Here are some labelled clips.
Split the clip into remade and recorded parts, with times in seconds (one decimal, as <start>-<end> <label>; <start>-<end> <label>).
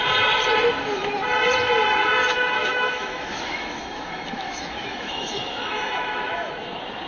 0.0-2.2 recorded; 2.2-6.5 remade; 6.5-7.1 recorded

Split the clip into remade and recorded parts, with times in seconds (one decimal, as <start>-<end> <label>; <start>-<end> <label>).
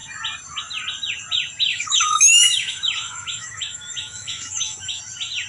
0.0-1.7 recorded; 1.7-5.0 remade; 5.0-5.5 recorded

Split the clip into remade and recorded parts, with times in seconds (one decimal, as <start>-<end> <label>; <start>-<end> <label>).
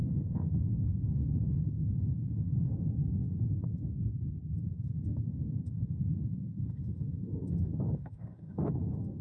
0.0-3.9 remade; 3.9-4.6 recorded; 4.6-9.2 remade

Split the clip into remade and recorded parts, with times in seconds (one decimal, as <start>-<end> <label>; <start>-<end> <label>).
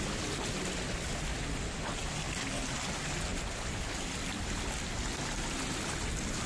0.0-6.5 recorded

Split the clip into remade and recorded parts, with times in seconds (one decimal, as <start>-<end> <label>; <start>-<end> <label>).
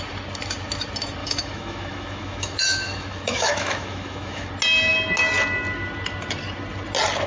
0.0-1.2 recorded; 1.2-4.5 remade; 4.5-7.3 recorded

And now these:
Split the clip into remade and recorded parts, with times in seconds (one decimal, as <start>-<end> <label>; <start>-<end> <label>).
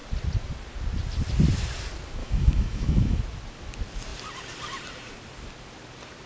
0.0-2.2 recorded; 2.2-3.2 remade; 3.2-6.3 recorded